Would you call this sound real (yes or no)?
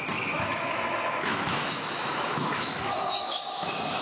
no